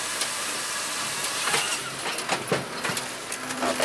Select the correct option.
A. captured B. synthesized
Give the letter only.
A